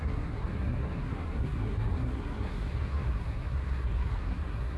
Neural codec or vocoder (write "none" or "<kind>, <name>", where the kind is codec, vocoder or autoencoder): codec, SNAC